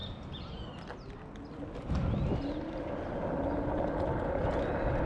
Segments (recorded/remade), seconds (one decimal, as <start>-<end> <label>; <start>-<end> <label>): 0.0-5.1 recorded

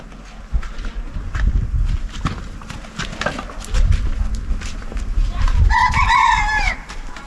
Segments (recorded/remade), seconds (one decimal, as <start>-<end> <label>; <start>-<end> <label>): 0.0-4.9 recorded; 4.9-5.7 remade; 5.7-6.2 recorded; 6.2-7.3 remade

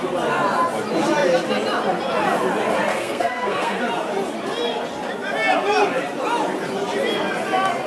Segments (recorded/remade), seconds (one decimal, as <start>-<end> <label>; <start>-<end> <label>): 0.0-2.9 recorded; 2.9-3.8 remade; 3.8-7.9 recorded

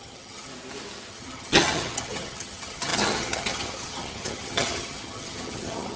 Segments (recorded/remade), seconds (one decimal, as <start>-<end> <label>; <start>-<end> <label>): 0.0-0.5 remade; 0.5-1.1 recorded; 1.1-6.0 remade

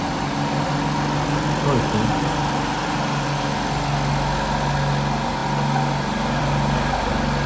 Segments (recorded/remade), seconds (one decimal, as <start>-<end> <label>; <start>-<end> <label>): 0.0-7.5 recorded

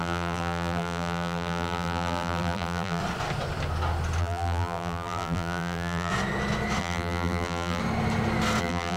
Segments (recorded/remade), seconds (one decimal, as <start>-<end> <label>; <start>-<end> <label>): 0.0-3.0 remade; 3.0-4.2 recorded; 4.2-6.1 remade; 6.1-6.8 recorded; 6.8-7.8 remade; 7.8-8.6 recorded; 8.6-9.0 remade

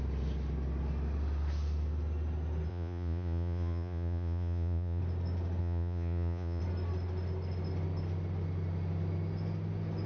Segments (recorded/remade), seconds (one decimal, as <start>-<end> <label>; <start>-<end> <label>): 0.0-2.7 recorded; 2.7-5.0 remade; 5.0-5.6 recorded; 5.6-6.6 remade; 6.6-10.1 recorded